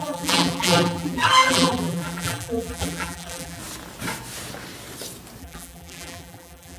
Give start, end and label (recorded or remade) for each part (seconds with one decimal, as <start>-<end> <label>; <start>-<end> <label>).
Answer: 0.0-3.6 remade; 3.6-5.4 recorded; 5.4-6.8 remade